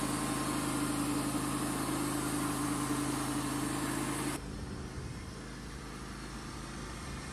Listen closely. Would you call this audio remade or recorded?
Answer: recorded